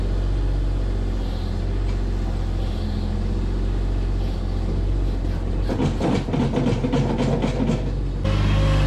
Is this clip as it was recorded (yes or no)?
yes